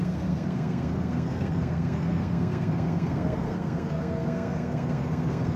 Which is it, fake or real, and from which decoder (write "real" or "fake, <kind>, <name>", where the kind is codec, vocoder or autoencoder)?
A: fake, codec, SNAC